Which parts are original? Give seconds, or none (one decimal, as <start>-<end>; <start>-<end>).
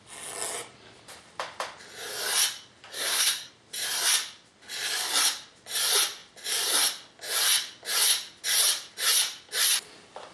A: 0.0-2.9; 3.5-10.3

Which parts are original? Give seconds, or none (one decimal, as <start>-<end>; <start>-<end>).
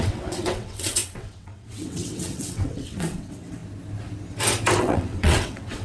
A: 3.6-4.8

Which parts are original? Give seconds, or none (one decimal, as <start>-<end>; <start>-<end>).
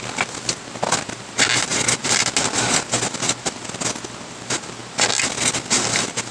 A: 0.0-6.3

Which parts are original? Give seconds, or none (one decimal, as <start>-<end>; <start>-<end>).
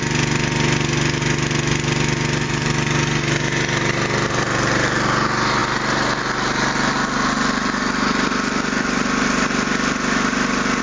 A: 0.0-10.8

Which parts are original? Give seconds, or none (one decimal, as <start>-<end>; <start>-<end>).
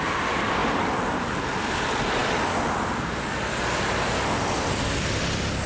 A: 0.0-5.7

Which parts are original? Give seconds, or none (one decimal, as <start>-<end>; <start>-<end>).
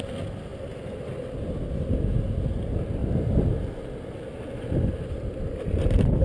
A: 0.0-3.0; 3.8-6.2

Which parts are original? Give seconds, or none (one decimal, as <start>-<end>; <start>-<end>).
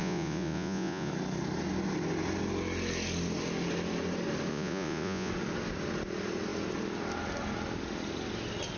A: 1.1-4.5; 5.3-8.8